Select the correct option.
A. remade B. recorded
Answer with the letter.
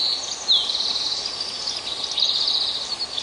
B